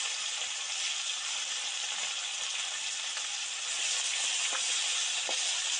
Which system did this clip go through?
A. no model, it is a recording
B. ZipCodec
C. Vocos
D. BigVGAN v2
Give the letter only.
A